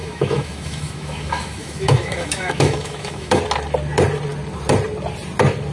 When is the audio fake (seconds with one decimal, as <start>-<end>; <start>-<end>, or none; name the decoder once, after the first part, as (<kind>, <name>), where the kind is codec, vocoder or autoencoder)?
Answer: 0.0-3.4 (autoencoder, DAC-VAE)